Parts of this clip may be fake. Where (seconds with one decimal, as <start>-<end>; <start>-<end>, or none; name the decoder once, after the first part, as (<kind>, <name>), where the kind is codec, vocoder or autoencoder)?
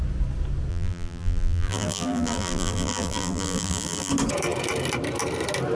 0.7-4.1 (vocoder, BigVGAN v2)